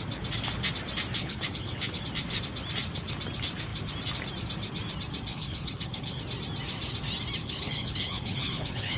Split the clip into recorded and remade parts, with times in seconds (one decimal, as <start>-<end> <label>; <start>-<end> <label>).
0.0-1.2 recorded; 1.2-2.0 remade; 2.0-5.3 recorded; 5.3-6.2 remade; 6.2-7.4 recorded; 7.4-9.0 remade